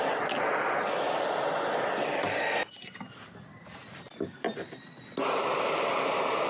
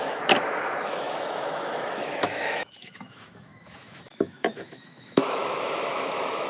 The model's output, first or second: second